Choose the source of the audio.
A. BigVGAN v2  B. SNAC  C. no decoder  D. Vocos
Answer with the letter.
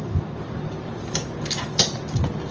C